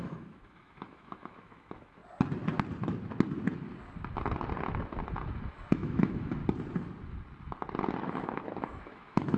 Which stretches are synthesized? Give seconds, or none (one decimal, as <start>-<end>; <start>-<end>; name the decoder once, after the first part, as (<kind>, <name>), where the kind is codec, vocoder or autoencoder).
0.0-2.0 (autoencoder, DAC-VAE); 5.5-6.4; 8.0-9.4